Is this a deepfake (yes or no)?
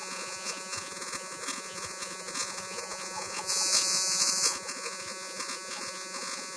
yes